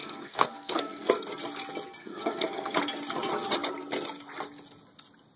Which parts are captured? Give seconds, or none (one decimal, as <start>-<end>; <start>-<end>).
1.1-2.0; 2.8-5.4